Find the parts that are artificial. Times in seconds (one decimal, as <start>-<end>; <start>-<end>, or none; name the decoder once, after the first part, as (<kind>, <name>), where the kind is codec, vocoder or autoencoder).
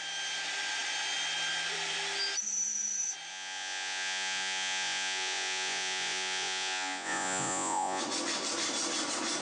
3.3-8.0 (vocoder, Vocos)